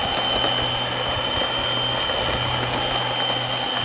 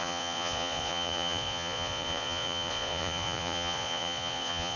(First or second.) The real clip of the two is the first